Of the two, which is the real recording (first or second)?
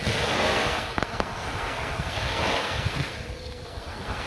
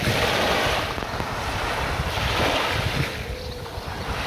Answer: second